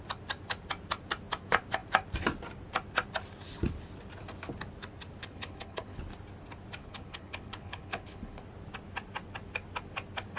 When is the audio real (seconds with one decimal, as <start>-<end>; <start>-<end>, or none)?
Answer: 0.0-5.2; 6.0-6.8; 8.4-10.4